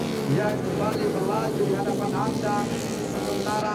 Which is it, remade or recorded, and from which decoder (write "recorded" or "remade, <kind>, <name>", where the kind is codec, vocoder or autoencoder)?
recorded